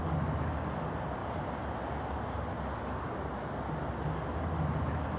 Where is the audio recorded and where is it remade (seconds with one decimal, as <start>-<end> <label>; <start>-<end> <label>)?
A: 0.0-5.2 recorded